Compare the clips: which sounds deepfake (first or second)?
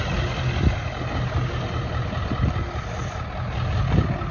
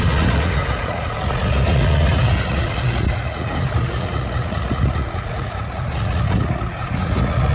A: second